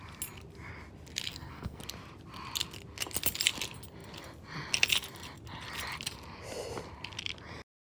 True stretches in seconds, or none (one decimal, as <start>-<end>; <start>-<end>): 0.0-1.3; 1.8-8.0